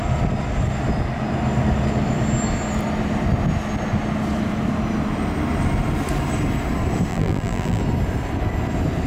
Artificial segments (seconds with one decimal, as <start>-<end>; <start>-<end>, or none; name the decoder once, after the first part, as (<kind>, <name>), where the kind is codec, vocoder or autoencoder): 7.1-7.8 (vocoder, BigVGAN v2)